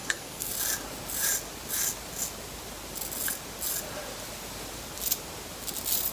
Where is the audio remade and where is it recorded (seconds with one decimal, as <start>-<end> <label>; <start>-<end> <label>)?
0.0-0.5 remade; 0.5-6.1 recorded